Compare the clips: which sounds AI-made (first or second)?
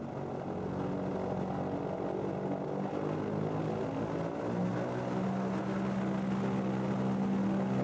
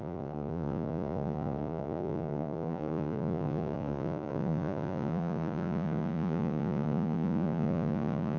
second